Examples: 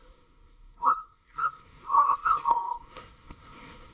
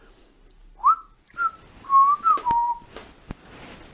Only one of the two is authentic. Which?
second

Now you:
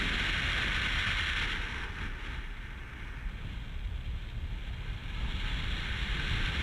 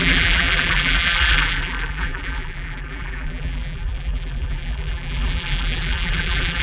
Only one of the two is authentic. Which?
first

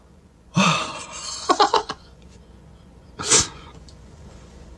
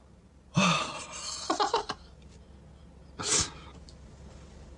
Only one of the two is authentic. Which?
second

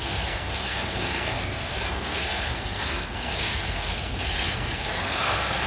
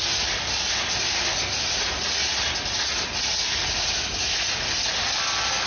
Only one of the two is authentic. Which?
second